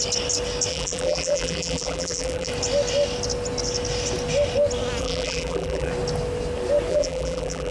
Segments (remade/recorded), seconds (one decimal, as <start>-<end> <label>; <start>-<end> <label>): 0.0-0.7 recorded; 0.7-2.5 remade; 2.5-5.0 recorded; 5.0-5.9 remade; 5.9-6.9 recorded; 6.9-7.7 remade